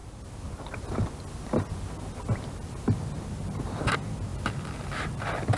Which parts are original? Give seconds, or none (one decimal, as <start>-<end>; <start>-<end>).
0.0-4.3